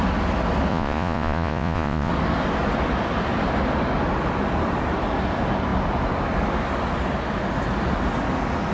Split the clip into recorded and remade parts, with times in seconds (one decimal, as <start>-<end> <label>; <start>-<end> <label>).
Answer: 0.0-0.7 recorded; 0.7-2.1 remade; 2.1-8.7 recorded